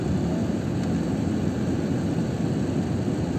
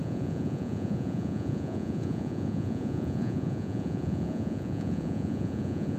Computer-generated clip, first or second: second